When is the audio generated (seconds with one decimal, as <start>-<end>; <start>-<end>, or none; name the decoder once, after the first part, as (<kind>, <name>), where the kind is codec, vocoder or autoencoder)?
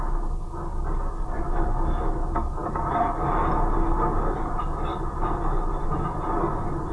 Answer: none